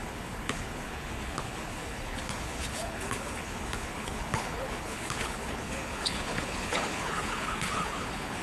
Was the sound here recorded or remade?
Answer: remade